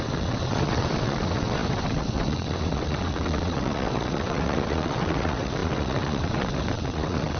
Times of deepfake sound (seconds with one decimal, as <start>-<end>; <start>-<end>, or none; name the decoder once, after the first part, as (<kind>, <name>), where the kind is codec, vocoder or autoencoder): 0.0-7.4 (vocoder, WaveNeXt)